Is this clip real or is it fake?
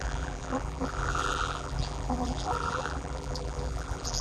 fake